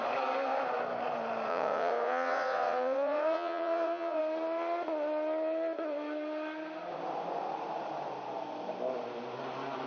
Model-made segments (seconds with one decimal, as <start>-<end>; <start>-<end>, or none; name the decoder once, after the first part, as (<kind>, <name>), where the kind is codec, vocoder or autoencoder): 1.5-4.2 (vocoder, WaveNeXt)